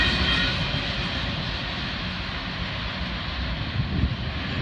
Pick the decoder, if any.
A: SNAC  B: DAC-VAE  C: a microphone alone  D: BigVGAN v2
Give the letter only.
C